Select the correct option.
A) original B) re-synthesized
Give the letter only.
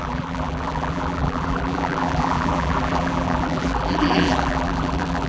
B